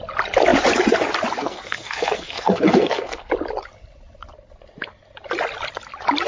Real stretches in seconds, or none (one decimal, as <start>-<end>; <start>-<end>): 0.0-1.4; 3.3-6.3